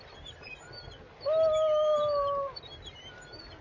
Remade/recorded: recorded